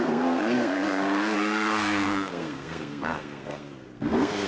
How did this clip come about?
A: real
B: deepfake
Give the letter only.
B